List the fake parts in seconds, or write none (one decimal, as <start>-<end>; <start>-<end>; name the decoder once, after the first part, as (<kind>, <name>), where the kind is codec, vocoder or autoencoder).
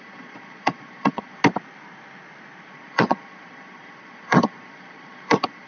0.0-1.4 (vocoder, Vocos); 2.7-5.7